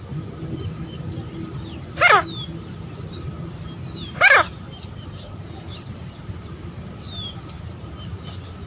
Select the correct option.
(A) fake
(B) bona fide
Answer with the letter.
B